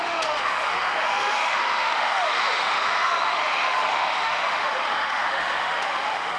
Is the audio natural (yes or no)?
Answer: no